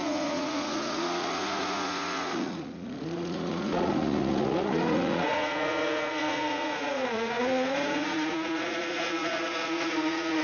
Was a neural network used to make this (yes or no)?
yes